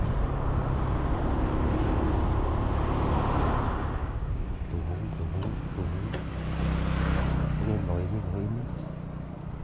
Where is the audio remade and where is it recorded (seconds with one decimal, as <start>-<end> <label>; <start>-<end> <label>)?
0.0-4.0 recorded; 4.0-4.6 remade; 4.6-9.6 recorded